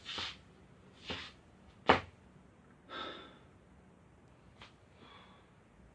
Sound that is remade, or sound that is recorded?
recorded